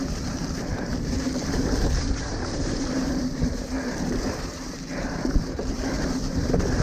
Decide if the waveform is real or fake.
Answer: fake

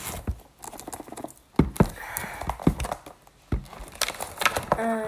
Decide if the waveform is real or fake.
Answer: real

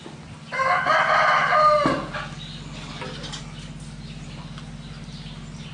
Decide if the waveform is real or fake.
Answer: real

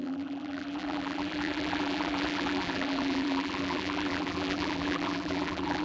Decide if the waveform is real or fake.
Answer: fake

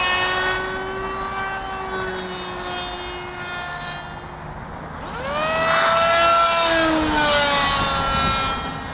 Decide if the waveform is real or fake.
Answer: real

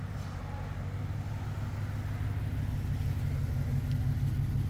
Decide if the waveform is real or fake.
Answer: real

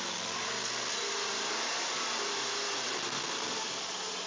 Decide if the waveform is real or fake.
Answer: real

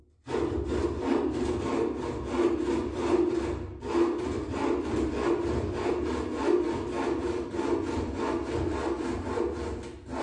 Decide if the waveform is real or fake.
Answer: real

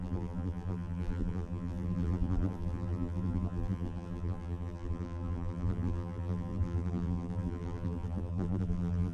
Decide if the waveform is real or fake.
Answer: fake